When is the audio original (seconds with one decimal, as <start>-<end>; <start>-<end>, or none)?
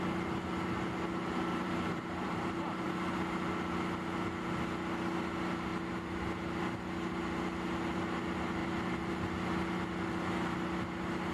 0.0-1.5; 2.9-11.3